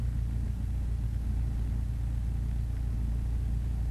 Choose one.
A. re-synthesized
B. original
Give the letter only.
B